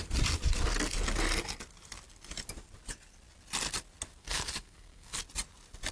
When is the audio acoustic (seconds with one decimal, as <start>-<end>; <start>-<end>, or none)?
0.0-4.2; 5.2-5.9